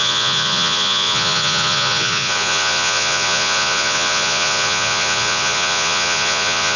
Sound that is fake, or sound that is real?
fake